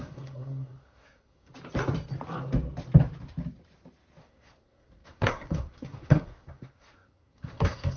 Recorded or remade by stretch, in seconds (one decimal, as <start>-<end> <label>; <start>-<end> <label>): 0.0-1.5 remade; 1.5-4.2 recorded; 4.2-8.0 remade